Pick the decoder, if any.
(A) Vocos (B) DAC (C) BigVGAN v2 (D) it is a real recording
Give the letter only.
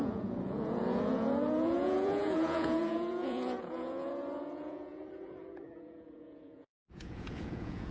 A